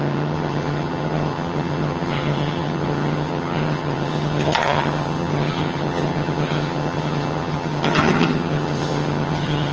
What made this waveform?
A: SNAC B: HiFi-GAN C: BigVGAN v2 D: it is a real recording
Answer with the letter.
B